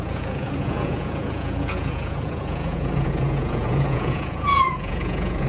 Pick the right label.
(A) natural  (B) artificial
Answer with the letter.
B